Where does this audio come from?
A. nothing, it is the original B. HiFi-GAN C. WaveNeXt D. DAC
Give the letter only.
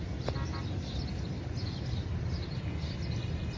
A